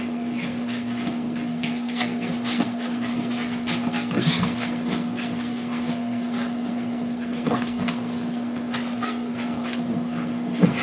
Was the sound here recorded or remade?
remade